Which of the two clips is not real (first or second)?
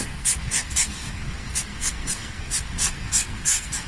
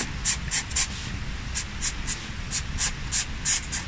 first